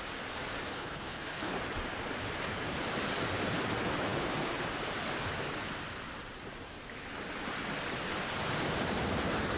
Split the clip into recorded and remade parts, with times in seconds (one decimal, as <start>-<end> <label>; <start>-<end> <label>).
0.0-0.7 recorded; 0.7-1.5 remade; 1.5-9.6 recorded